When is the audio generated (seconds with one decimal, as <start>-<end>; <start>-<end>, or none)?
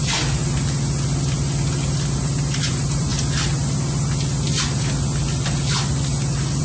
0.0-0.4; 2.2-3.1